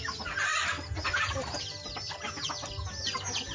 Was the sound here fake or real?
real